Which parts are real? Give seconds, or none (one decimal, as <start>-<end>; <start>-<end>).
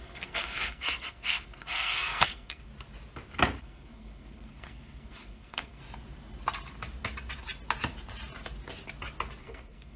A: 2.7-3.6; 5.8-9.4